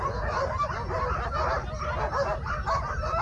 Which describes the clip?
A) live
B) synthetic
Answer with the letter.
A